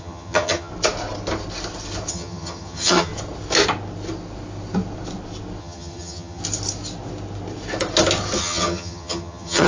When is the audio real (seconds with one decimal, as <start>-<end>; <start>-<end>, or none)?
0.7-2.1; 3.1-5.6; 6.4-8.4